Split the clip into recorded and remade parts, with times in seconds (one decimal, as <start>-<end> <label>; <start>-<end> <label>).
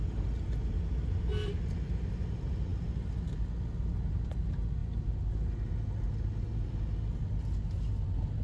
0.0-8.4 recorded